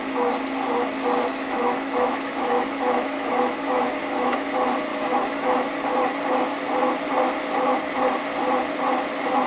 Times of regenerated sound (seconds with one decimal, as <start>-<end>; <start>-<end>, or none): 1.3-4.5; 4.9-5.7